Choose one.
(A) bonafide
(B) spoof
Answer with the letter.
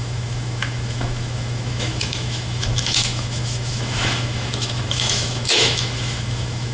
B